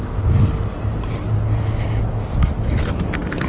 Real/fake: real